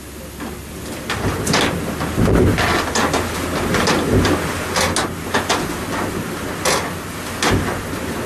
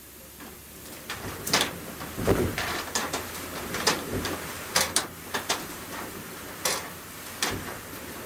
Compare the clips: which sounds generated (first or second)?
second